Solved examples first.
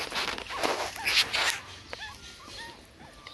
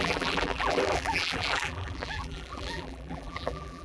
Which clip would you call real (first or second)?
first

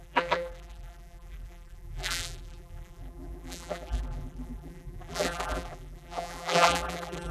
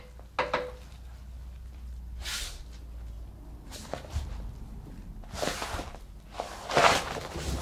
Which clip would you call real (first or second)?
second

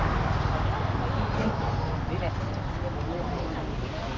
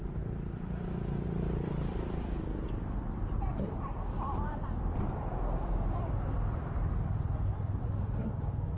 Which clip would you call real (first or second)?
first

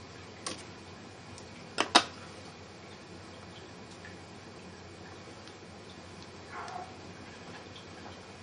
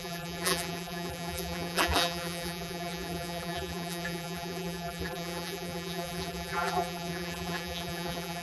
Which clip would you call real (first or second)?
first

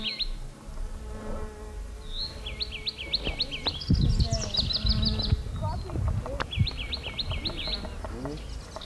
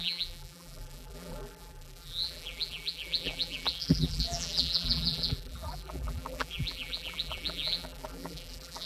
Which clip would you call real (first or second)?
first